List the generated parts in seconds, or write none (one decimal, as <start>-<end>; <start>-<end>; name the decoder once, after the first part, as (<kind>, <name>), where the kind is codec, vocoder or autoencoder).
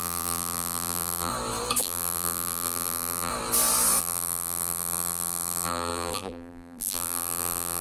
0.0-1.3 (vocoder, BigVGAN v2); 1.8-3.3; 4.0-7.8